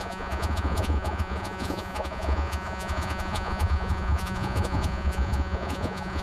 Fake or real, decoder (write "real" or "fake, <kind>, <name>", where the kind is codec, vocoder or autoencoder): fake, vocoder, Vocos